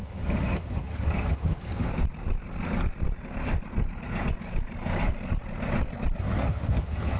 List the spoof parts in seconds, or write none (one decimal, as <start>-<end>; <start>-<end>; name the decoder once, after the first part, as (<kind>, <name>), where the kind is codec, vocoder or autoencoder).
0.0-1.9 (vocoder, HiFi-GAN); 6.2-7.2